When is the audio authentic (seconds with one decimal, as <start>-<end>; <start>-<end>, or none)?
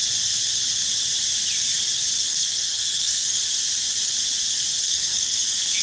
0.0-2.2; 3.4-4.8